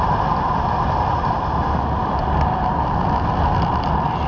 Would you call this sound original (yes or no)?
yes